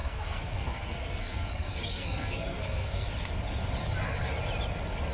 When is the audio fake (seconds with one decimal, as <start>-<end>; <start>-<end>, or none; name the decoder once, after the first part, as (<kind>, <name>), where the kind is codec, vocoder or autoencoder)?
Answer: 0.0-3.1 (codec, SNAC)